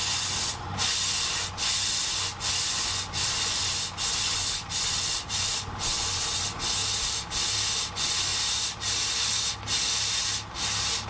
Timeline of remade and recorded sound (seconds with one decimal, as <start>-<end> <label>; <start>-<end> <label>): 0.0-6.8 remade; 6.8-7.9 recorded; 7.9-8.3 remade; 8.3-11.1 recorded